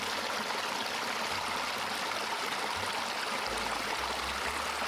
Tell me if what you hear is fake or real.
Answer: real